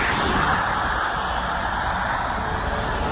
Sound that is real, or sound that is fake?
real